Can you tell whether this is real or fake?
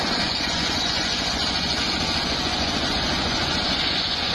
fake